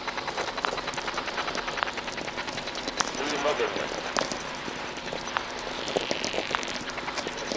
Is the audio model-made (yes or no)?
yes